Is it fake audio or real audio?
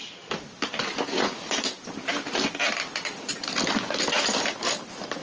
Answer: real